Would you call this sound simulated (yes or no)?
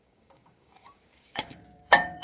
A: yes